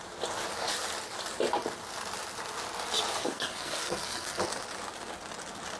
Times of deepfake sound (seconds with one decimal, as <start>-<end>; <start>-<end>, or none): 3.2-4.4